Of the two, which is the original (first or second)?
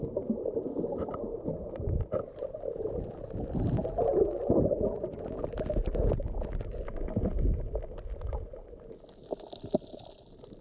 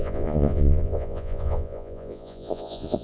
first